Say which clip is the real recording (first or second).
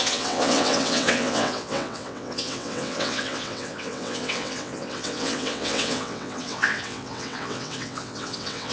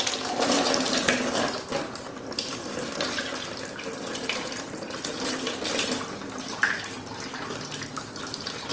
second